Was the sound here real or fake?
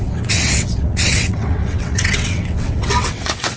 fake